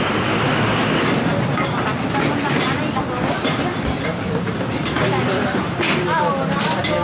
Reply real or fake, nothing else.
real